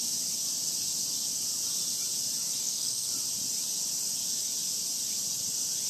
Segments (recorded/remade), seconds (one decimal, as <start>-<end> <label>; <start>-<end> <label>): 0.0-2.6 recorded; 2.6-3.1 remade; 3.1-5.9 recorded